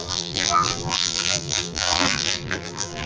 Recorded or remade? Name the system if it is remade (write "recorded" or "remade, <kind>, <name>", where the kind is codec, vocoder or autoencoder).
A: remade, vocoder, BigVGAN v2